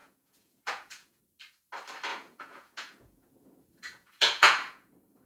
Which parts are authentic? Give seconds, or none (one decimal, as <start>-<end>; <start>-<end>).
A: 1.2-2.1